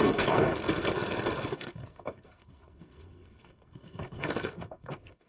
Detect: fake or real fake